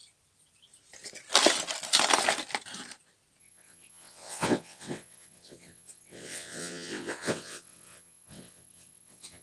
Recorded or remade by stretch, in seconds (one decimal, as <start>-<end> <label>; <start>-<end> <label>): 0.0-3.4 recorded; 3.4-9.4 remade